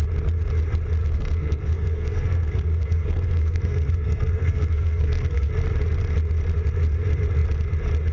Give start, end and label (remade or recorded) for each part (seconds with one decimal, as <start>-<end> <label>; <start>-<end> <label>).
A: 0.0-1.0 recorded; 1.0-5.5 remade; 5.5-8.1 recorded